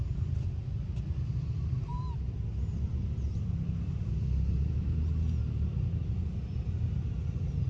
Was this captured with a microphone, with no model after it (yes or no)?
yes